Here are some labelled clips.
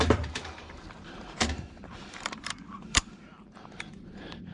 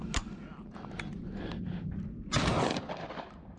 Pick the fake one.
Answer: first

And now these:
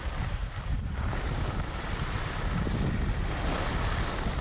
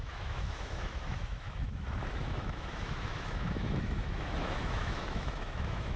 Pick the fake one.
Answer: second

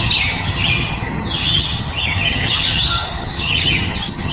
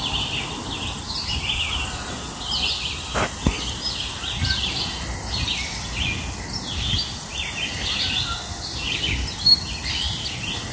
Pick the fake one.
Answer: first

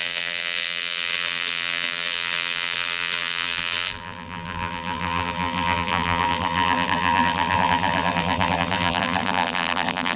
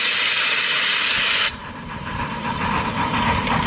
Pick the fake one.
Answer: first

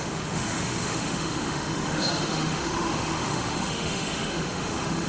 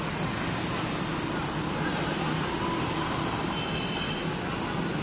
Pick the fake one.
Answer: first